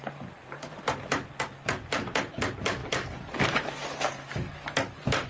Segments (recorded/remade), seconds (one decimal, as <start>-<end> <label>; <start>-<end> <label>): 0.0-5.3 recorded